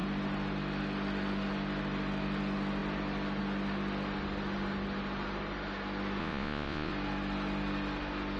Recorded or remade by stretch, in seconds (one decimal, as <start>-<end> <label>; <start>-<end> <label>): 0.0-6.2 recorded; 6.2-6.9 remade; 6.9-8.4 recorded